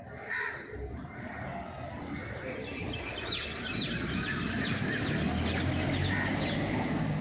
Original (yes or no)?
yes